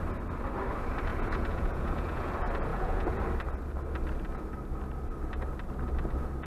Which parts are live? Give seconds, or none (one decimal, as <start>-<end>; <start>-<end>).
0.0-1.1; 2.3-2.7; 3.2-6.5